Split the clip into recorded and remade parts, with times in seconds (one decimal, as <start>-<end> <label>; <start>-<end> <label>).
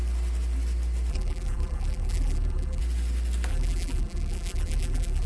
0.0-1.1 recorded; 1.1-2.8 remade; 2.8-3.5 recorded; 3.5-5.3 remade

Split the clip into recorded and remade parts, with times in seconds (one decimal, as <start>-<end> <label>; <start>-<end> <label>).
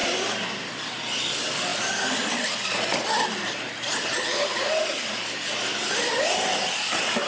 0.0-7.3 recorded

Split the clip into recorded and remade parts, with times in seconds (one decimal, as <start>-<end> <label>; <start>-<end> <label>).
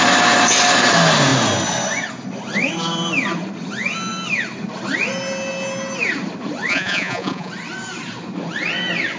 0.0-6.7 recorded; 6.7-7.5 remade; 7.5-9.2 recorded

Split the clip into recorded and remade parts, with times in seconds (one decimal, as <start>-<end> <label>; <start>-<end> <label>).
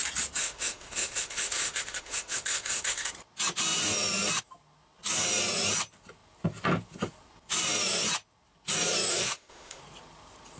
0.0-0.4 recorded; 0.4-3.1 remade; 3.1-9.1 recorded; 9.1-9.8 remade; 9.8-10.6 recorded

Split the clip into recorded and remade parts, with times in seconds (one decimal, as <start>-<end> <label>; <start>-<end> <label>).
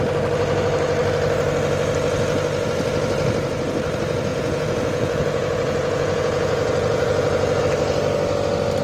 0.0-4.3 recorded; 4.3-7.6 remade; 7.6-8.8 recorded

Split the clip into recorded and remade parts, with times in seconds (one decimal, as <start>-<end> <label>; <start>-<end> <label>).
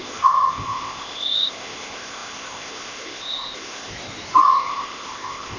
0.0-3.9 remade; 3.9-4.4 recorded; 4.4-5.6 remade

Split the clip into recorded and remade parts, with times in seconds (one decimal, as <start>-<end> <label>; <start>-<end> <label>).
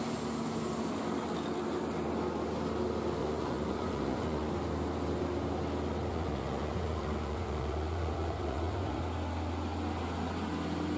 0.0-3.2 recorded; 3.2-4.5 remade; 4.5-6.1 recorded; 6.1-9.0 remade; 9.0-11.0 recorded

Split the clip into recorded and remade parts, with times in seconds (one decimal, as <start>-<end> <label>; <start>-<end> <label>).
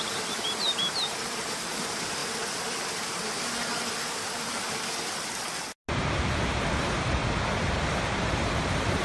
0.0-2.2 remade; 2.2-6.8 recorded; 6.8-7.2 remade; 7.2-8.2 recorded; 8.2-9.0 remade